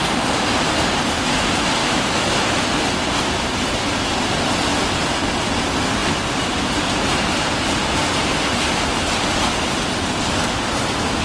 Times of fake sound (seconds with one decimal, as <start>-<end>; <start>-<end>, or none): 1.8-2.6